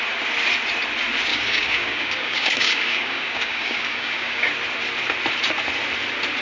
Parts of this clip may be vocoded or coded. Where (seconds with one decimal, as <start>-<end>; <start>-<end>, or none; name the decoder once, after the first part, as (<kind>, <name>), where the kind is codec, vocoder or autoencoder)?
1.3-4.5 (codec, DAC)